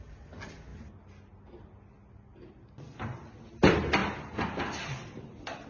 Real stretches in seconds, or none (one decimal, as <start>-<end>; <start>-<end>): 0.0-5.7